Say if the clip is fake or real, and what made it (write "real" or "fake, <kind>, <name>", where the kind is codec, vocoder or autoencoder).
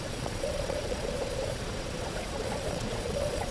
fake, vocoder, Vocos